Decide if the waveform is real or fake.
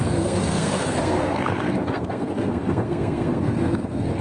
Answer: fake